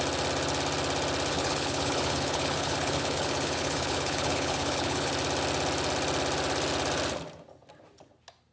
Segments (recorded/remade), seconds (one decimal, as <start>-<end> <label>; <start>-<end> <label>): 0.0-1.3 recorded; 1.3-5.1 remade; 5.1-8.5 recorded